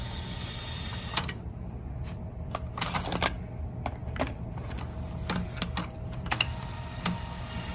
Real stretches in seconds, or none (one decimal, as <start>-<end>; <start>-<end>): 0.0-0.9; 1.7-4.0; 4.6-7.7